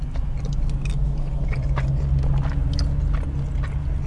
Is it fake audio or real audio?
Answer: real